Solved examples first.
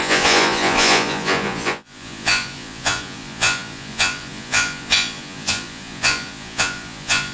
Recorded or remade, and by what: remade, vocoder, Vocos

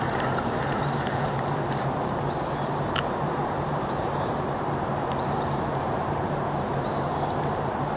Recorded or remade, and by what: remade, vocoder, BigVGAN v2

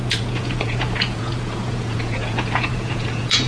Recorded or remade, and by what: remade, vocoder, Vocos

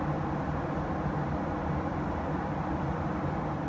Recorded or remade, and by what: recorded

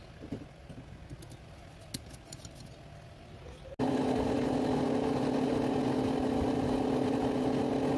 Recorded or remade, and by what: recorded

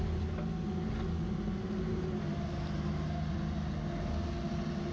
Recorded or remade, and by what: recorded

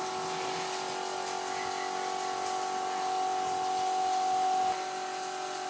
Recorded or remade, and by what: recorded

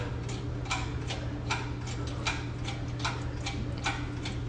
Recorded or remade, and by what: recorded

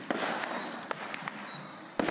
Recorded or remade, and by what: recorded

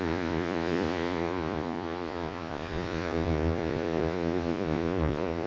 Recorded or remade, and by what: remade, vocoder, Vocos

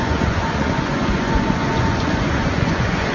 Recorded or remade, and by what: remade, vocoder, Vocos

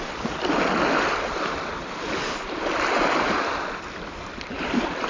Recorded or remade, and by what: recorded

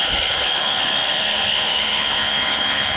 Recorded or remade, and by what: remade, codec, HILCodec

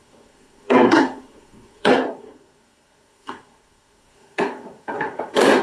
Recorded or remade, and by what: remade, codec, SNAC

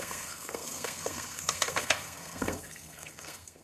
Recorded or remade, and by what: remade, codec, SNAC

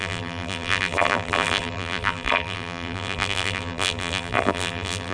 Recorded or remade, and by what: remade, vocoder, BigVGAN v2